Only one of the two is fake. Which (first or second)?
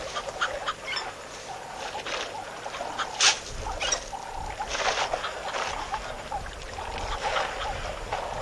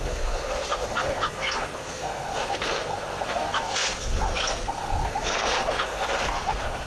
second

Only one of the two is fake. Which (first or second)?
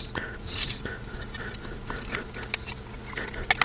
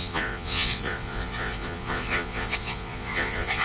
second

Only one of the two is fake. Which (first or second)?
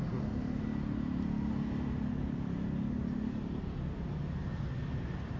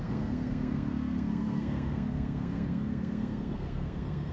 second